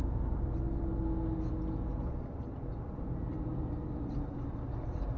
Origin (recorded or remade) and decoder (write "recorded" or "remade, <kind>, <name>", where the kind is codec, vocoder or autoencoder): recorded